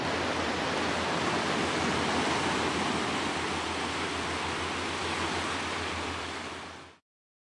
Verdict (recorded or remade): recorded